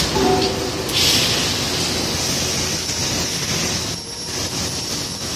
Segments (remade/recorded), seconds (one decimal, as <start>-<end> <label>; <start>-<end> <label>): 0.0-5.4 recorded